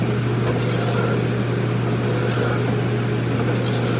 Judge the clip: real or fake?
real